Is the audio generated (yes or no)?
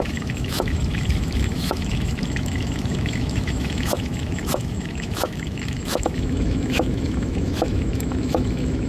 yes